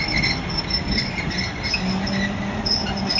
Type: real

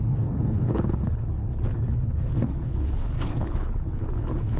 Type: fake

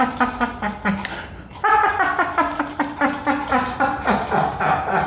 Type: real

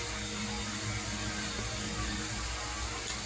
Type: real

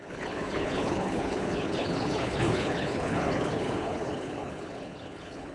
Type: fake